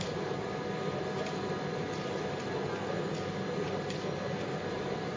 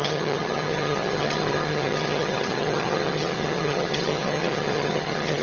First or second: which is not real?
second